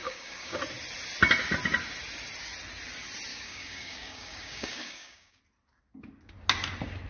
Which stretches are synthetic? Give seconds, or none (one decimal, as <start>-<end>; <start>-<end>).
0.0-0.6; 3.3-5.4